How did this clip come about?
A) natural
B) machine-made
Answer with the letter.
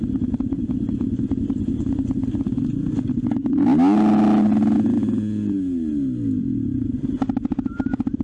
A